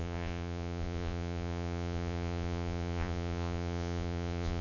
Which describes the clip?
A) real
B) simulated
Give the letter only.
B